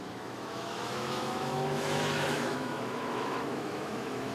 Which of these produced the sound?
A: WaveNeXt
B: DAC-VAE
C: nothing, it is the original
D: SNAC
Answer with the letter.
B